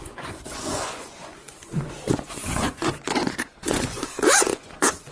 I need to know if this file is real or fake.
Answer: fake